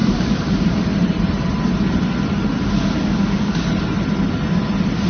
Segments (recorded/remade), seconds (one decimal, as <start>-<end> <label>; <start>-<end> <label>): 0.0-2.0 remade; 2.0-5.1 recorded